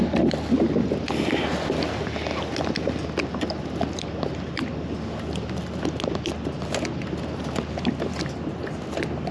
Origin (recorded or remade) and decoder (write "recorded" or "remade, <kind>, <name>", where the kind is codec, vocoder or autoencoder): recorded